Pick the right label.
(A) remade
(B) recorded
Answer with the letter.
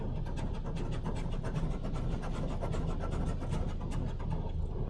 B